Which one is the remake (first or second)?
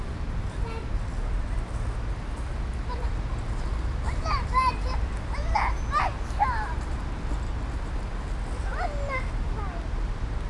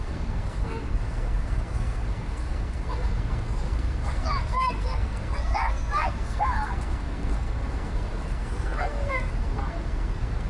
second